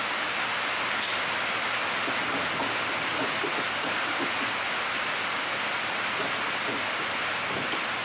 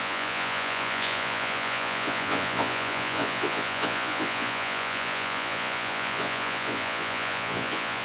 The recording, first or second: first